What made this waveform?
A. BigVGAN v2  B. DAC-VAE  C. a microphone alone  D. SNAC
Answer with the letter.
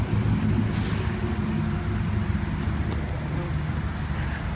C